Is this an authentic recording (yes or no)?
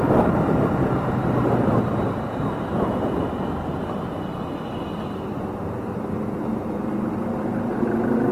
yes